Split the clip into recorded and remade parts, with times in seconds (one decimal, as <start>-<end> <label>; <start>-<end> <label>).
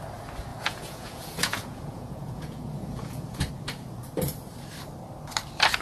0.0-0.5 recorded; 0.5-3.5 remade; 3.5-5.8 recorded